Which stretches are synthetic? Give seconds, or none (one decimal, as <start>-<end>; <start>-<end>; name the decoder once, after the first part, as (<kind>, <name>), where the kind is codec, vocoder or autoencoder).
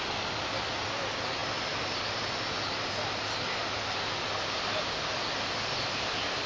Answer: none